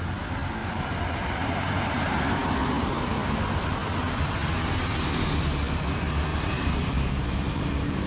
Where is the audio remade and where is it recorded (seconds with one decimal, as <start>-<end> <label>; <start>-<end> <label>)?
0.0-0.6 recorded; 0.6-2.2 remade; 2.2-6.3 recorded; 6.3-8.1 remade